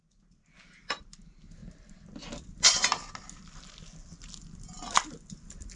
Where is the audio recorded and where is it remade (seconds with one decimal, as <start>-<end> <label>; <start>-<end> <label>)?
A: 0.0-5.8 recorded